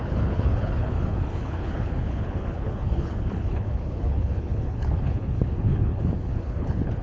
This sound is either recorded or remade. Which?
remade